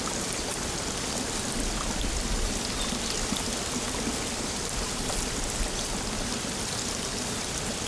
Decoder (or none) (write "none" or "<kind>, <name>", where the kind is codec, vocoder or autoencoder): none